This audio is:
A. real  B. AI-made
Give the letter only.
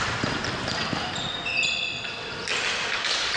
A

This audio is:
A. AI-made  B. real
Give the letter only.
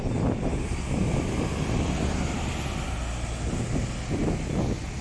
B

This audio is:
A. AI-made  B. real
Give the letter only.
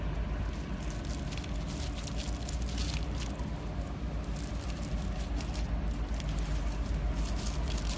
B